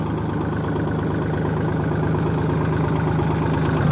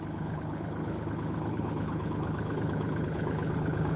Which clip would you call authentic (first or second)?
first